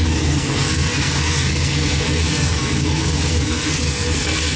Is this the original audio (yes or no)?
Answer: no